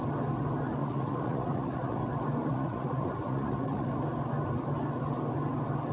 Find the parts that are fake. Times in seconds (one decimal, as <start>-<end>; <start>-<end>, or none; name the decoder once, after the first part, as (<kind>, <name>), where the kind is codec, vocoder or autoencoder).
0.8-2.0 (vocoder, Vocos); 2.4-3.9